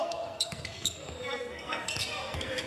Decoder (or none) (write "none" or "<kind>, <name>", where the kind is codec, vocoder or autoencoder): codec, SNAC